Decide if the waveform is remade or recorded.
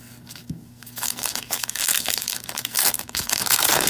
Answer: remade